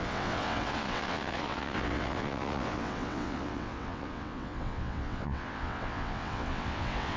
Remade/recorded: remade